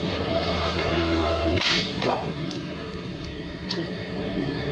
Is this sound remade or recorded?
remade